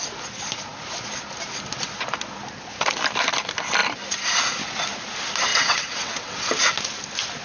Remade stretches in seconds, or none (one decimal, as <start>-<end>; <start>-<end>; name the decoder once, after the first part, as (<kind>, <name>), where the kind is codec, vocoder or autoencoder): 5.5-6.5 (vocoder, WaveNeXt)